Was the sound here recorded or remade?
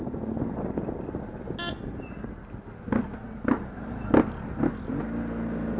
recorded